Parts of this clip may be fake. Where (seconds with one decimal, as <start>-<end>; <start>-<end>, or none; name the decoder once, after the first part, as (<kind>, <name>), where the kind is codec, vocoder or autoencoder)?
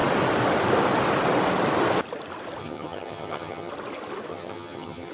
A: 2.6-3.7 (vocoder, HiFi-GAN); 4.3-5.1